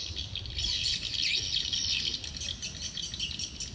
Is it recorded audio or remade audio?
recorded